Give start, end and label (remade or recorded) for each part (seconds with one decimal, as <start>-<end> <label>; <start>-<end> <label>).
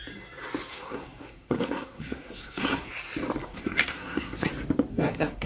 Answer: 0.0-0.7 recorded; 0.7-2.9 remade; 2.9-3.4 recorded; 3.4-4.5 remade; 4.5-4.9 recorded; 4.9-5.5 remade